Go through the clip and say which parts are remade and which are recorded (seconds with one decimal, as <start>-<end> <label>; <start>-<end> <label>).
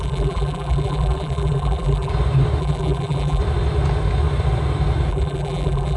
0.0-2.1 remade; 2.1-2.6 recorded; 2.6-3.4 remade; 3.4-5.1 recorded; 5.1-6.0 remade